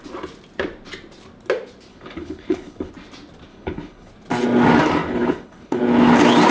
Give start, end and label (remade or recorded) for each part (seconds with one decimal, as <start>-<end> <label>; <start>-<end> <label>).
0.0-1.9 recorded; 1.9-2.9 remade; 2.9-3.5 recorded; 3.5-4.1 remade; 4.1-5.0 recorded; 5.0-5.8 remade; 5.8-6.5 recorded